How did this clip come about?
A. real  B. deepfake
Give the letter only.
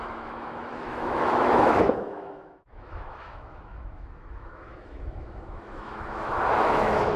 B